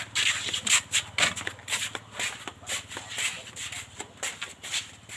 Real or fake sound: real